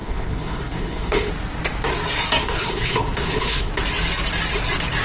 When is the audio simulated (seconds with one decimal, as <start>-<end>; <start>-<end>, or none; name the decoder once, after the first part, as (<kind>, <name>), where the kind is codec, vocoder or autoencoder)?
0.0-1.3 (codec, HILCodec); 2.4-3.7